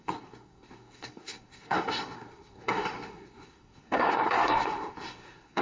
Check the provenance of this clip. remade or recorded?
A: remade